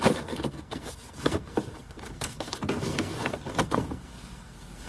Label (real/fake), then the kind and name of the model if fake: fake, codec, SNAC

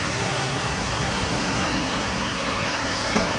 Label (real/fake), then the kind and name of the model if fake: fake, codec, SNAC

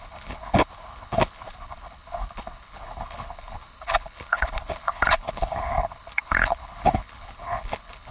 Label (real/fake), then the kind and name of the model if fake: fake, codec, HILCodec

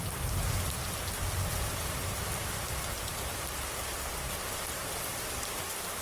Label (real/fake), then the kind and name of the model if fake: real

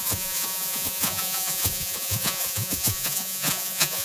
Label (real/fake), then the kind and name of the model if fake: fake, vocoder, Vocos